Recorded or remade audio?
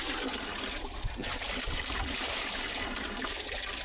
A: remade